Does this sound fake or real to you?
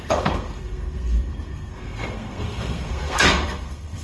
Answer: fake